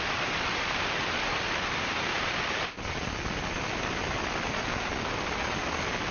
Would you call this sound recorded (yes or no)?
yes